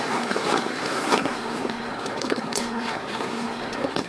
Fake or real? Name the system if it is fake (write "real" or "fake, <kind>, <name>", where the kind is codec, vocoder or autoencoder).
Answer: fake, codec, SNAC